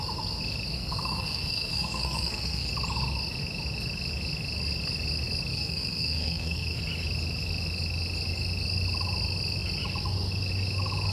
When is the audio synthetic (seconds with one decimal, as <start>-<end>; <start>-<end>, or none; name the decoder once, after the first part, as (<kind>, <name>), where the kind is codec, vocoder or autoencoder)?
0.7-2.7 (codec, SNAC); 5.5-6.8